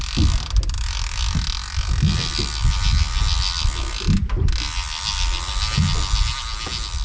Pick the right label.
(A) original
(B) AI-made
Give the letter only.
A